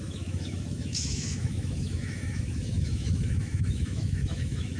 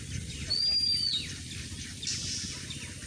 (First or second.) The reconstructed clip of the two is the first